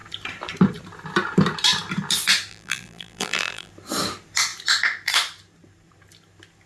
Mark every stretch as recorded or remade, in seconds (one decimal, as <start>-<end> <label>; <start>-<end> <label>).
0.0-2.5 recorded; 2.5-3.7 remade; 3.7-6.7 recorded